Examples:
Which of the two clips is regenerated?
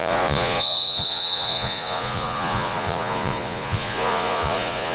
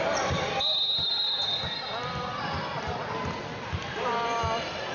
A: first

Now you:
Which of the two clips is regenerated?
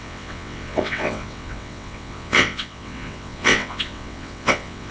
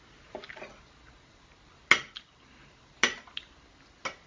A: first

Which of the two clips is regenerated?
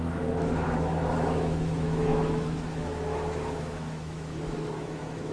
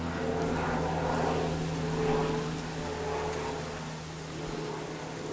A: first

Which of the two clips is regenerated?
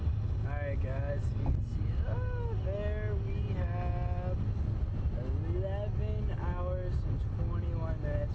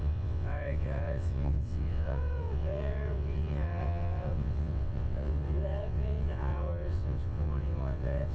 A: second